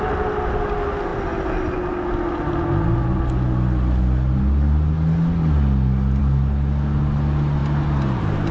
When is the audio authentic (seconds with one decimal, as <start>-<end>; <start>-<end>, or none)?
0.0-8.5